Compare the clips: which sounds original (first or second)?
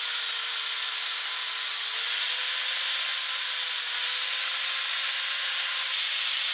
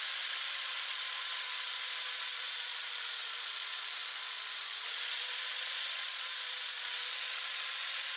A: first